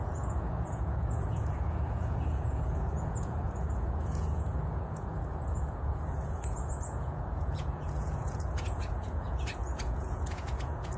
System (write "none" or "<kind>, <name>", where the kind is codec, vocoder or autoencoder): vocoder, Vocos